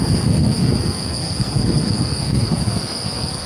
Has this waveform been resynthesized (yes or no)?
yes